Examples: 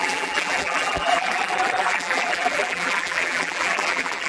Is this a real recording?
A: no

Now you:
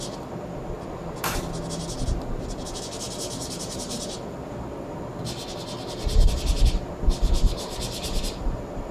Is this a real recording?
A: yes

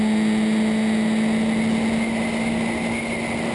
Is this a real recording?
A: yes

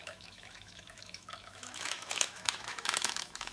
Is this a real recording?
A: no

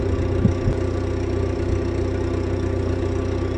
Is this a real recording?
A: yes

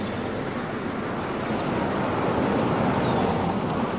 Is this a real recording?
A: yes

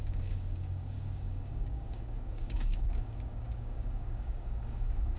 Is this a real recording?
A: no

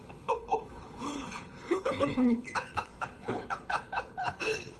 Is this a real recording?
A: no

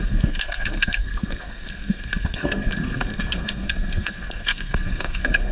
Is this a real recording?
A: no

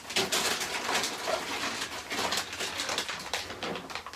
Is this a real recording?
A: yes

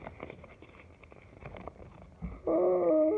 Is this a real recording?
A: yes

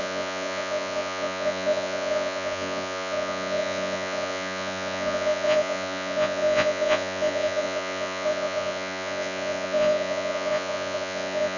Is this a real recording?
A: no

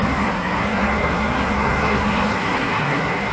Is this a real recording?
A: no